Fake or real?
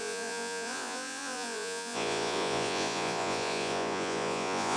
fake